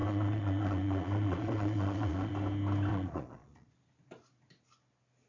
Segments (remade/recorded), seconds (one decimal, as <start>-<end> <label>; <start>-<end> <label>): 0.0-2.3 remade; 2.3-2.9 recorded; 2.9-3.7 remade; 3.7-5.3 recorded